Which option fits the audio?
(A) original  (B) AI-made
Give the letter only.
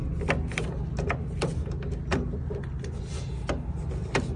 A